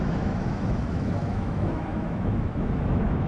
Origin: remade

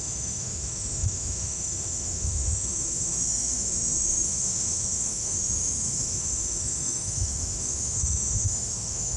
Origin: remade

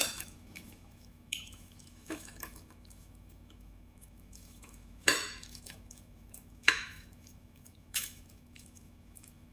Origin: remade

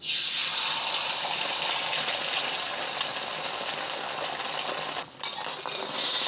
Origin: recorded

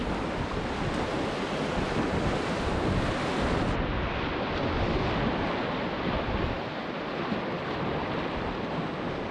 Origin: recorded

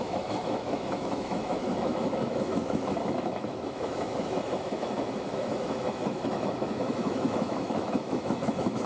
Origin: remade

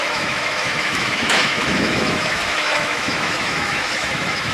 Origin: remade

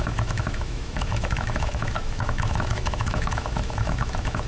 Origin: remade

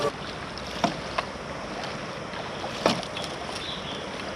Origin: recorded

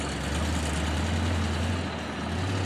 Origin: recorded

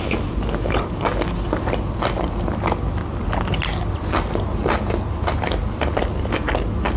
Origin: recorded